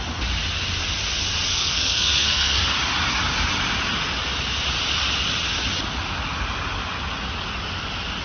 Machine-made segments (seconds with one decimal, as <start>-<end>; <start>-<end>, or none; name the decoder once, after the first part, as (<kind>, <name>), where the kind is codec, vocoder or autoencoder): 1.5-2.7 (codec, SNAC)